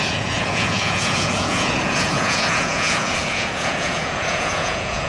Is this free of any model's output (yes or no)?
no